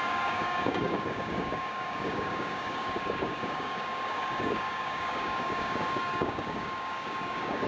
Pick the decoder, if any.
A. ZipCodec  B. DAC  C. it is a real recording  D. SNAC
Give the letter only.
B